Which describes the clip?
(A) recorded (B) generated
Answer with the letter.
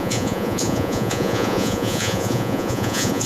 B